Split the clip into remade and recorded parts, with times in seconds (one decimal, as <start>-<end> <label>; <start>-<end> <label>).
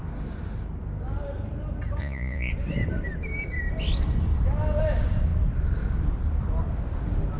0.0-2.0 recorded; 2.0-2.5 remade; 2.5-7.4 recorded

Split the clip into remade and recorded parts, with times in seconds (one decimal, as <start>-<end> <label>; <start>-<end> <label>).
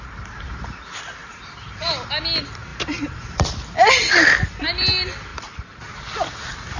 0.0-1.2 recorded; 1.2-1.9 remade; 1.9-2.7 recorded; 2.7-3.5 remade; 3.5-5.3 recorded; 5.3-5.8 remade; 5.8-6.8 recorded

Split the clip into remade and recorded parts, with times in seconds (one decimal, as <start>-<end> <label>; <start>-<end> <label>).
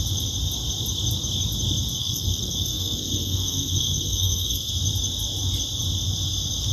0.0-2.0 recorded; 2.0-4.7 remade; 4.7-6.7 recorded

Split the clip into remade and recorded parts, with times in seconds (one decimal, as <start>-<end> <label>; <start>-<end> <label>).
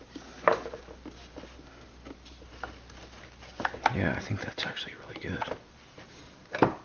0.0-6.8 recorded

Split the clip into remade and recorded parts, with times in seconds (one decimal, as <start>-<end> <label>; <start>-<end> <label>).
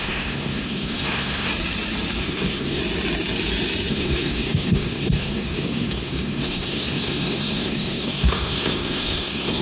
0.0-1.5 remade; 1.5-2.2 recorded; 2.2-2.8 remade; 2.8-3.9 recorded; 3.9-9.6 remade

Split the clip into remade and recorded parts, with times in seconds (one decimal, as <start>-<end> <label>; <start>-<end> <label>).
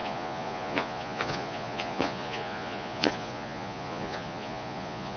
0.0-5.2 remade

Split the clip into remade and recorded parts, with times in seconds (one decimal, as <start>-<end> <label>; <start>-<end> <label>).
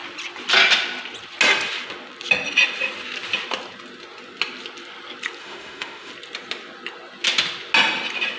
0.0-5.4 recorded; 5.4-6.1 remade; 6.1-8.4 recorded